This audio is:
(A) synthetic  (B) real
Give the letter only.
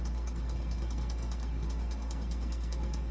A